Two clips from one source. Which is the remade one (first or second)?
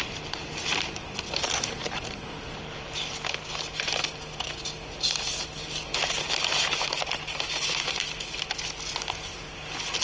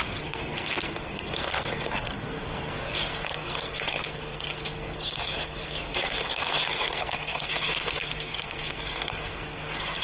second